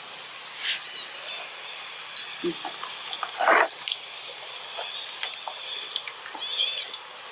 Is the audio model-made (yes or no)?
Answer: no